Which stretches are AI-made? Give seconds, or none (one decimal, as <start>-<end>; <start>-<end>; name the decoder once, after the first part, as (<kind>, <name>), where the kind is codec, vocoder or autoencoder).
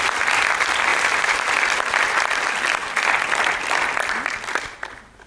0.9-1.5 (vocoder, BigVGAN v2)